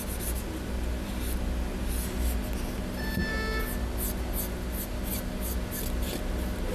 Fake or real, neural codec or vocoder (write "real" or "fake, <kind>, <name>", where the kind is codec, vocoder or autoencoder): real